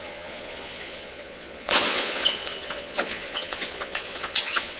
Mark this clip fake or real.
fake